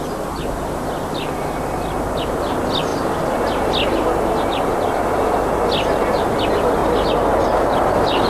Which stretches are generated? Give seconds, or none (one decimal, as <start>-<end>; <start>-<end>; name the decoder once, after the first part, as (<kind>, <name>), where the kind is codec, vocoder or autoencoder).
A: none